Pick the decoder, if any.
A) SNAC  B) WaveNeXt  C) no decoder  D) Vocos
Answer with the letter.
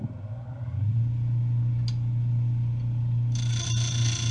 C